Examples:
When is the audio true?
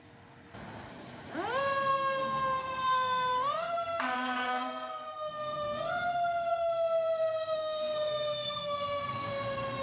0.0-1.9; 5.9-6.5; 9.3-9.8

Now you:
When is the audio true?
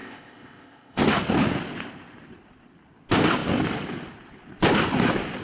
1.0-5.4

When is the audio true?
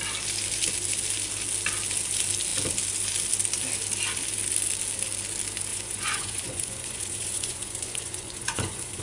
0.0-5.7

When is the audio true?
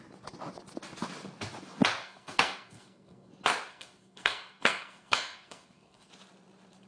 0.0-2.0; 3.3-3.7; 6.1-6.9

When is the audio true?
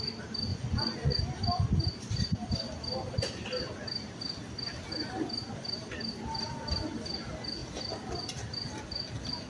0.0-0.5; 1.2-9.5